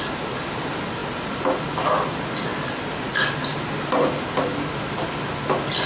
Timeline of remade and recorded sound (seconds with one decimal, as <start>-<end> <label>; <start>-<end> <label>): 0.0-5.9 recorded